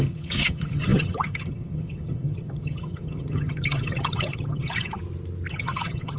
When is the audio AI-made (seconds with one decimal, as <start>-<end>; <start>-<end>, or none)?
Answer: 0.0-5.0; 5.5-6.2

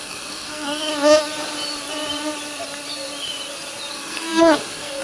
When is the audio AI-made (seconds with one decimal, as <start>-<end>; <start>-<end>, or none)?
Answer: 0.0-0.9; 3.9-5.0

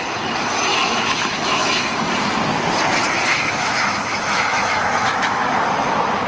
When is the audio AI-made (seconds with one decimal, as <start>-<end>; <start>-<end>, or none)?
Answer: 0.7-1.9; 3.3-5.5

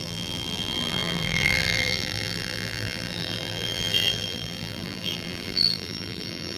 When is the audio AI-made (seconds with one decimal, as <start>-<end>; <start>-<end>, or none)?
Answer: 0.0-6.6